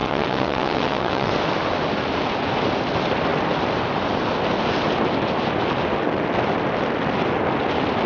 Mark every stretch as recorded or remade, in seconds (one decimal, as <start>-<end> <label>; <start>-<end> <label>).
0.0-1.3 remade; 1.3-8.1 recorded